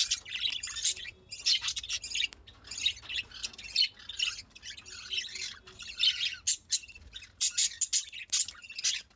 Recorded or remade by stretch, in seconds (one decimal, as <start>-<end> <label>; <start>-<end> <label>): 0.0-9.2 recorded